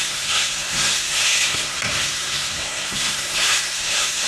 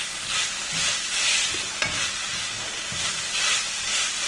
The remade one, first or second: first